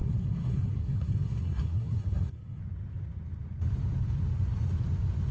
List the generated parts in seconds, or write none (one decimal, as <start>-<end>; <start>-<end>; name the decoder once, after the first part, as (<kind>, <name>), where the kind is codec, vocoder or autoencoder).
0.0-2.6 (codec, SNAC)